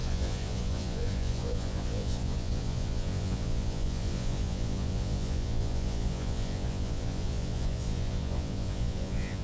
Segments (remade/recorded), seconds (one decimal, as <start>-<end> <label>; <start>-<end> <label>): 0.0-9.4 remade

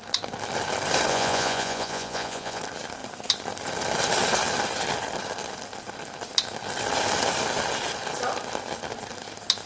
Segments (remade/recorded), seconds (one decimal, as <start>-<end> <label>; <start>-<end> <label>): 0.0-1.1 recorded; 1.1-2.6 remade; 2.6-9.7 recorded

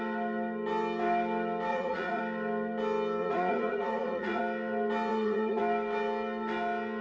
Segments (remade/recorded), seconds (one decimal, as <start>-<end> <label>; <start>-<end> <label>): 0.0-1.7 recorded; 1.7-2.2 remade; 2.2-3.2 recorded; 3.2-4.4 remade; 4.4-5.1 recorded; 5.1-5.6 remade; 5.6-7.0 recorded

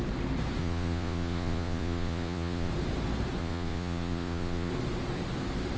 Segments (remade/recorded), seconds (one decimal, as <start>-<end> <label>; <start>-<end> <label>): 0.0-0.6 recorded; 0.6-2.7 remade; 2.7-3.4 recorded; 3.4-4.7 remade; 4.7-5.8 recorded

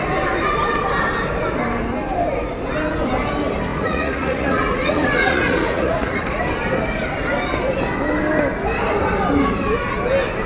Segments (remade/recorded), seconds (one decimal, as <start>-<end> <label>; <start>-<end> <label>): 0.0-3.7 recorded; 3.7-6.4 remade; 6.4-10.5 recorded

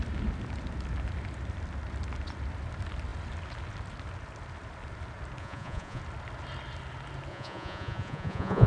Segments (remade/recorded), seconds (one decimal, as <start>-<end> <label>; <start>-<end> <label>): 0.0-5.4 recorded; 5.4-6.0 remade; 6.0-7.3 recorded; 7.3-8.7 remade